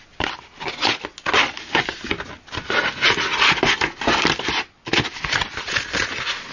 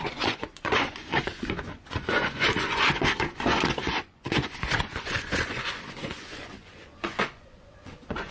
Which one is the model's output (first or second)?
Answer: second